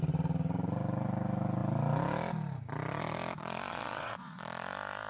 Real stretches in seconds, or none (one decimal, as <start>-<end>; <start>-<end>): 0.0-3.7; 4.4-5.1